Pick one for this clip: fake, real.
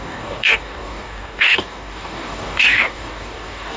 fake